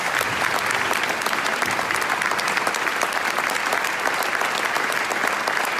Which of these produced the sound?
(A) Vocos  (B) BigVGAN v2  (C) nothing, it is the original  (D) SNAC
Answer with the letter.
B